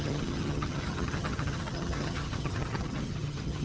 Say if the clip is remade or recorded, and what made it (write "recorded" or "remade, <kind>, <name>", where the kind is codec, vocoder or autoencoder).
remade, vocoder, HiFi-GAN